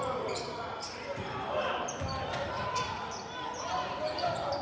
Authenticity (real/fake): fake